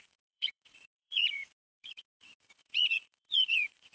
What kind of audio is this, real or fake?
fake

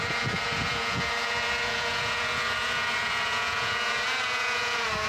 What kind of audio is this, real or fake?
fake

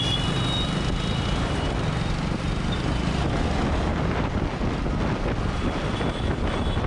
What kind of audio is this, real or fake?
real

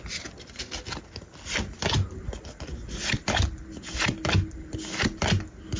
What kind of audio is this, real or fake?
real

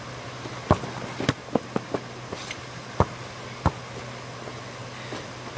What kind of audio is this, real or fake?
real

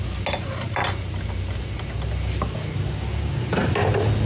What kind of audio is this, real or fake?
real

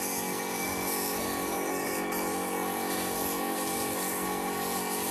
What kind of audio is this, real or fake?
fake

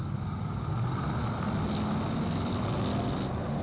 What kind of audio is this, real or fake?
real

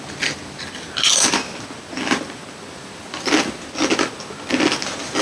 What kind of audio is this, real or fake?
real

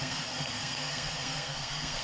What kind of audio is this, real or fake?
fake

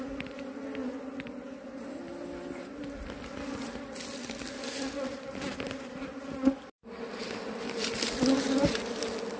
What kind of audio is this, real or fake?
real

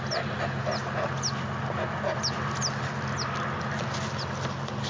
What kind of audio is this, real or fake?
real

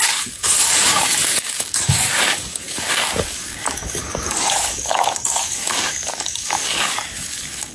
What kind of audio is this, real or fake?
fake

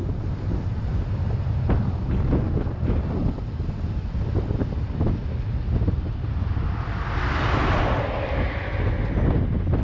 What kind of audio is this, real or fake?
real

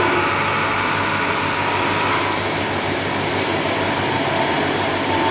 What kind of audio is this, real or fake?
real